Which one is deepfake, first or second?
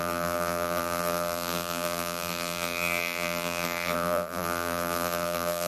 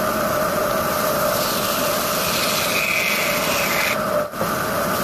first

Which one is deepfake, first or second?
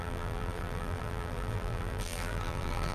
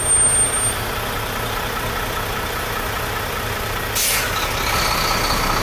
first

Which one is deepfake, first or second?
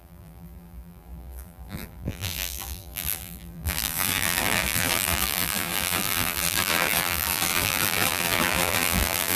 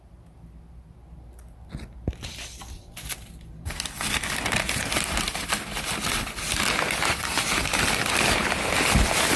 first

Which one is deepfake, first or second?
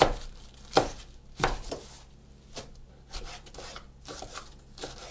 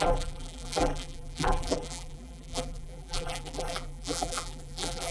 second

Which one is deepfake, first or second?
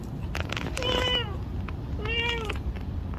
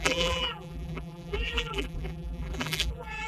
second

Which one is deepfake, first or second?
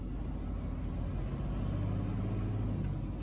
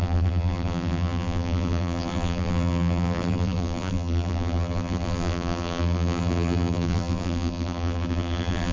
second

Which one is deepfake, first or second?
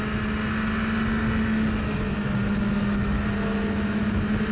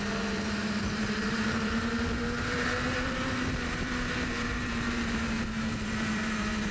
second